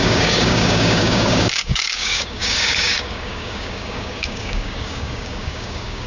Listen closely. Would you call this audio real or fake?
fake